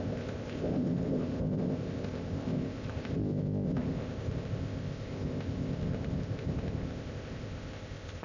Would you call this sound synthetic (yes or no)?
yes